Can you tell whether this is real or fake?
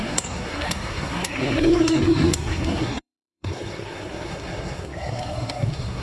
fake